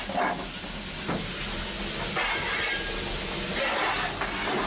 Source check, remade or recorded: recorded